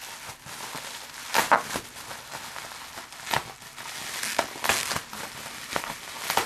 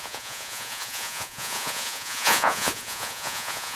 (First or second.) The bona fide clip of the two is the first